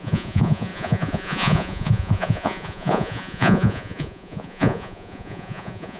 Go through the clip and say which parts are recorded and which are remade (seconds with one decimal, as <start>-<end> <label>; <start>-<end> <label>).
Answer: 0.0-6.0 remade